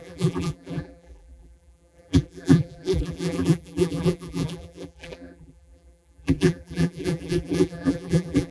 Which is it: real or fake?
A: fake